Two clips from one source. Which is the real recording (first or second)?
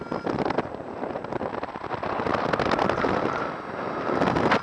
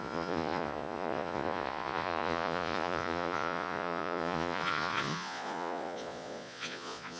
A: first